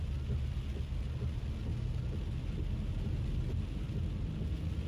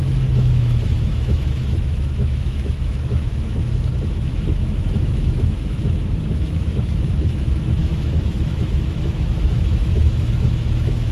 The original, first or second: first